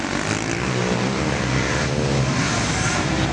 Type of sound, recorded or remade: recorded